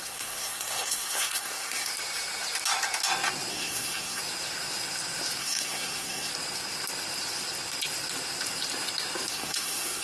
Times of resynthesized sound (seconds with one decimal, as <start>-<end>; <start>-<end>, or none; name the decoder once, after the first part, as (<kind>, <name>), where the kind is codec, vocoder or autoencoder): 0.0-1.9 (codec, SNAC); 3.5-4.2; 5.4-6.3; 9.3-10.0